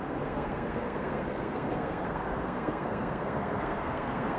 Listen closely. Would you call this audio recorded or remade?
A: remade